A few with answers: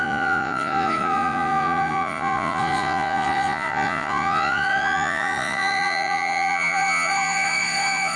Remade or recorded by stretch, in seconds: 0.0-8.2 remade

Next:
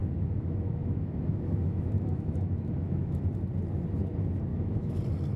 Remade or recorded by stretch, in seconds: 0.0-3.2 remade; 3.2-4.5 recorded; 4.5-5.0 remade; 5.0-5.4 recorded